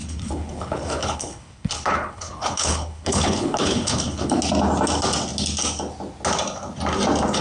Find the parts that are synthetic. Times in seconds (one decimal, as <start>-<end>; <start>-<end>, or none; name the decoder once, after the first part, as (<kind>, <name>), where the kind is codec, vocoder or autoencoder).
0.0-4.4 (codec, HILCodec)